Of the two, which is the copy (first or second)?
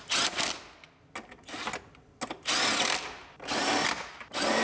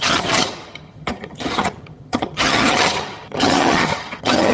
second